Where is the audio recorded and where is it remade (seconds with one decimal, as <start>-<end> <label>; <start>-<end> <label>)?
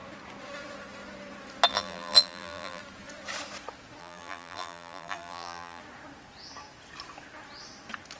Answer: 0.0-1.7 recorded; 1.7-2.8 remade; 2.8-4.0 recorded; 4.0-5.8 remade; 5.8-8.2 recorded